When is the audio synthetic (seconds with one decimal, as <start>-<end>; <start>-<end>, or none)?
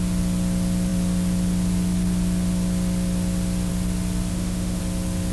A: 4.3-4.8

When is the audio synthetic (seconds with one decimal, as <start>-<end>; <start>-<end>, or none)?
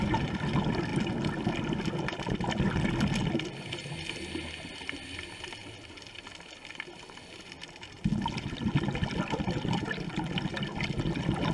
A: none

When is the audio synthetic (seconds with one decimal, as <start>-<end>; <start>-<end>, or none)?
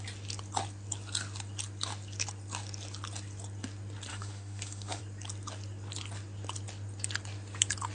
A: 4.1-5.0